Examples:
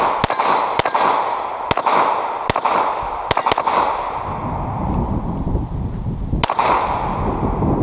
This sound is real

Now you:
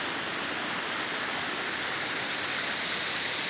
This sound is real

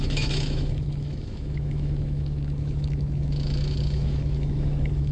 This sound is fake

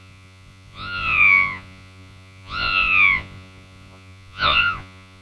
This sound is fake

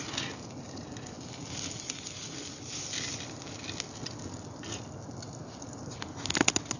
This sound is real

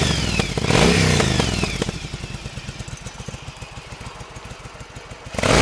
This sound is real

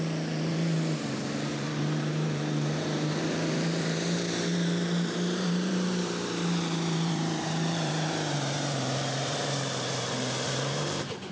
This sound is fake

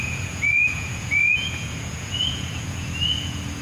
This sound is fake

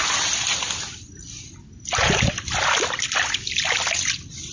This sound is real